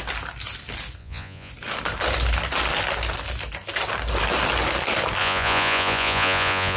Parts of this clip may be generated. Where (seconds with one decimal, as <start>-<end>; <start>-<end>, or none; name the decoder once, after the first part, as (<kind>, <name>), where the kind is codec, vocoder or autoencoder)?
1.0-1.5 (vocoder, Vocos); 5.2-6.8